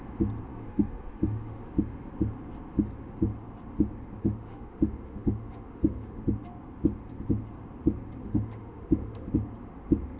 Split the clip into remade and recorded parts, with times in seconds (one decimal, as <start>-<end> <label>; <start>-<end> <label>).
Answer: 0.0-0.5 recorded; 0.5-1.7 remade; 1.7-4.2 recorded; 4.2-6.2 remade; 6.2-8.2 recorded; 8.2-9.3 remade; 9.3-10.2 recorded